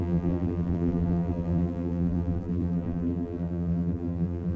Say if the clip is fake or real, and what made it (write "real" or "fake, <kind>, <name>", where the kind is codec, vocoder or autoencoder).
fake, vocoder, BigVGAN v2